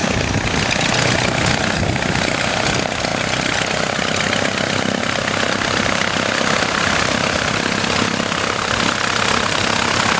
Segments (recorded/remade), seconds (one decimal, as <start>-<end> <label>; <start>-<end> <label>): 0.0-10.2 recorded